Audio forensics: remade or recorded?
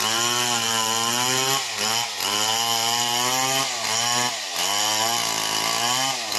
recorded